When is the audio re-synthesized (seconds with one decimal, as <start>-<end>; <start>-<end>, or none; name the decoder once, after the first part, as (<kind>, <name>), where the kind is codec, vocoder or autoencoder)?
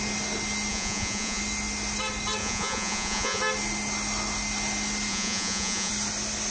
0.7-1.4 (vocoder, Vocos); 2.4-3.4; 5.1-5.9